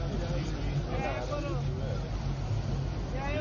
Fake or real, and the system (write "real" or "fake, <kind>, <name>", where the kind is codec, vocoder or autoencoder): real